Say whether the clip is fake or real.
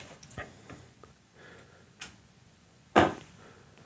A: fake